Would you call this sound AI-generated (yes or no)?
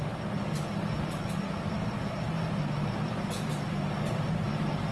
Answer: no